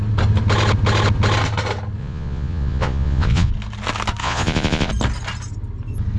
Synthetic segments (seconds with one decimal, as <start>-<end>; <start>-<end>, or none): 2.0-3.5; 4.2-4.9